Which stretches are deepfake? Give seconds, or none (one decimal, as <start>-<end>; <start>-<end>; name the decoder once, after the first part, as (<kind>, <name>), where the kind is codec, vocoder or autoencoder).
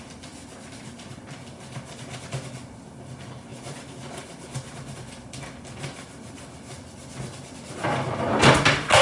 none